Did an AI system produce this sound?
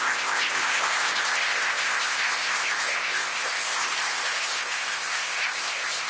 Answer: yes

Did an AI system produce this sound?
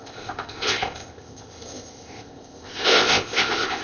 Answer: yes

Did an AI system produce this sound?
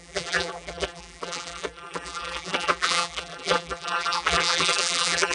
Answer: yes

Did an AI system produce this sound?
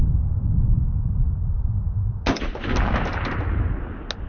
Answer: no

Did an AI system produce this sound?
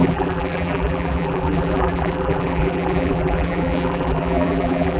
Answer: yes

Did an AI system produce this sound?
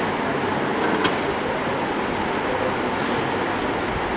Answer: no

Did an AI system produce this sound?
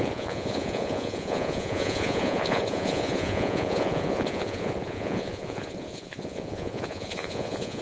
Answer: yes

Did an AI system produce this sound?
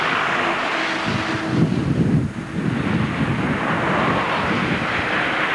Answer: no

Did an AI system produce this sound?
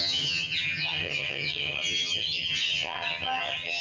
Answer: yes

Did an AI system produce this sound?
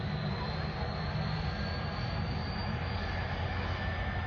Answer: no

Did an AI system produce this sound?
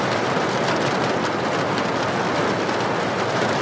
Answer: no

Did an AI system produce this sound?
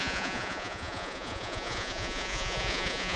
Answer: yes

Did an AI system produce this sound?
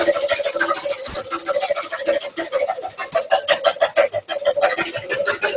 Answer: no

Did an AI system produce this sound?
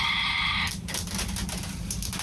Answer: no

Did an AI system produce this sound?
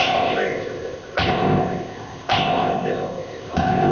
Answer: yes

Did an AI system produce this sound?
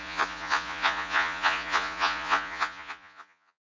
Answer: yes